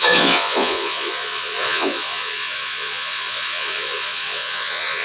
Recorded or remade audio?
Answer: remade